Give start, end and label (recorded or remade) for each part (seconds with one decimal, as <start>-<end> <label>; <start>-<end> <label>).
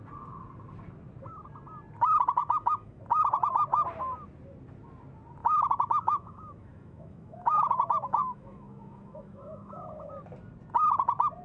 0.0-2.4 recorded; 2.4-3.0 remade; 3.0-5.4 recorded; 5.4-10.1 remade; 10.1-11.4 recorded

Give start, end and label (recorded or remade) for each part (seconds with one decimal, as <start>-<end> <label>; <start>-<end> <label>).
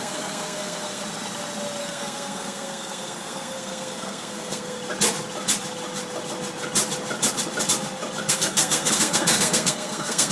0.0-1.0 remade; 1.0-1.8 recorded; 1.8-4.8 remade; 4.8-8.3 recorded; 8.3-10.3 remade